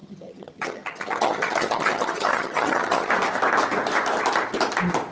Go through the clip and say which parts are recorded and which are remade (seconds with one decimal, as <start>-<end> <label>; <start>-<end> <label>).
0.0-3.1 remade; 3.1-5.1 recorded